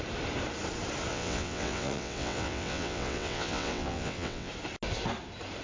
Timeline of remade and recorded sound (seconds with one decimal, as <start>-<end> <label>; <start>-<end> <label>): 0.0-1.1 recorded; 1.1-4.5 remade; 4.5-5.6 recorded